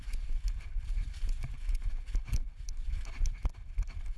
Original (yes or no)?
yes